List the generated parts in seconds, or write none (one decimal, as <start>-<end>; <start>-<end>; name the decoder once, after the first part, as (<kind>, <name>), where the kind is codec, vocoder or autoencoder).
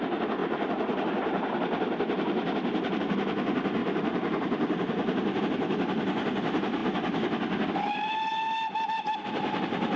0.4-3.0 (vocoder, BigVGAN v2); 3.8-5.4